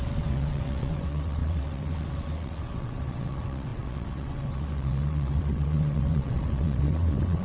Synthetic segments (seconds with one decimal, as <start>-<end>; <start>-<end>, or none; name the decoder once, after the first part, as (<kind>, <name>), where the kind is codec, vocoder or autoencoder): 0.0-7.4 (vocoder, WaveNeXt)